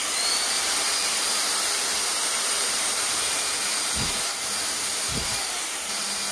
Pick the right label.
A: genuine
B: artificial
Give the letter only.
B